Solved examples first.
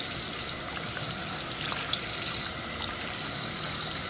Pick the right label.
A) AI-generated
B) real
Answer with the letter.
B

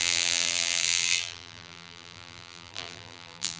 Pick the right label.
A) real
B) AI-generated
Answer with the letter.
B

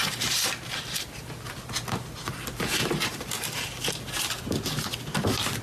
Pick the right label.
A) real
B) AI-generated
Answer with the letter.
A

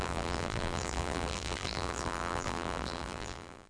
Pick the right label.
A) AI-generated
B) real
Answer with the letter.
A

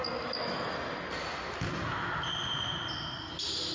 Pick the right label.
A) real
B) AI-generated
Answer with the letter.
A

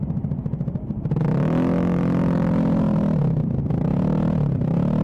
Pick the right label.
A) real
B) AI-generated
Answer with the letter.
A